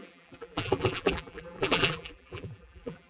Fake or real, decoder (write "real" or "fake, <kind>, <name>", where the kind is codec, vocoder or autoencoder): fake, vocoder, BigVGAN v2